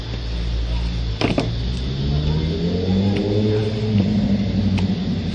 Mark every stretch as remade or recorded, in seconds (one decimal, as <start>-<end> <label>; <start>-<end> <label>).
0.0-5.3 recorded